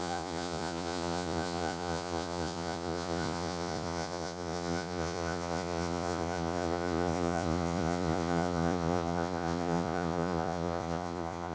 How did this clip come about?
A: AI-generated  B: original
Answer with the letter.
A